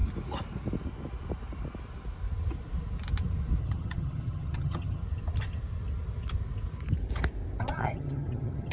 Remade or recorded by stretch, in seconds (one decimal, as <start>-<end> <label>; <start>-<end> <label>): 0.0-3.6 recorded; 3.6-5.0 remade; 5.0-7.6 recorded; 7.6-8.7 remade